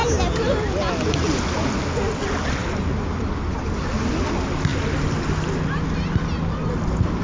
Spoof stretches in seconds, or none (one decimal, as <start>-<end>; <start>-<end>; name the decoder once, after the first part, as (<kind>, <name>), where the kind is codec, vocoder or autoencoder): none